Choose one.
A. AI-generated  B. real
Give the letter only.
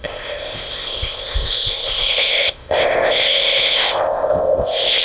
A